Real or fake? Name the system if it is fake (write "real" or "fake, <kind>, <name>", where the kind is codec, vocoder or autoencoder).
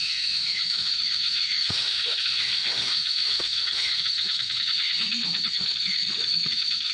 fake, autoencoder, DAC-VAE